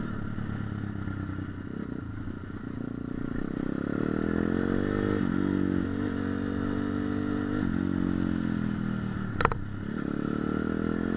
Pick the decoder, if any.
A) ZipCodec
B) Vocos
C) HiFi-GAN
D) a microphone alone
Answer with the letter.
D